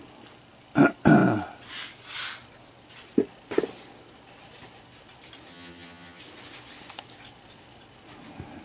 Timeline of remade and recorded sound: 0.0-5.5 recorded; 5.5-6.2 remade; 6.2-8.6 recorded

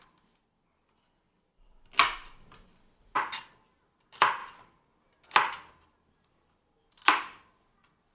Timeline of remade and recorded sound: 0.0-8.1 recorded